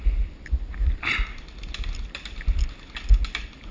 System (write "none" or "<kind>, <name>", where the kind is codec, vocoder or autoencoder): none